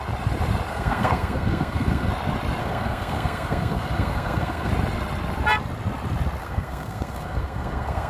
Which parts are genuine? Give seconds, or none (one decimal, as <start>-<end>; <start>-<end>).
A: 0.0-0.7; 2.1-2.6; 4.7-6.4